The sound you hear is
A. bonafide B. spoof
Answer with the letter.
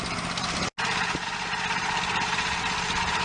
A